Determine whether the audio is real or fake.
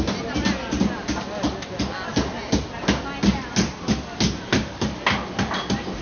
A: real